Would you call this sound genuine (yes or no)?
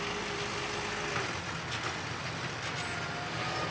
yes